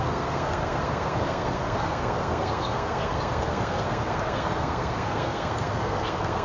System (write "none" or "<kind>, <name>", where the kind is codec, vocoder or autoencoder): codec, SNAC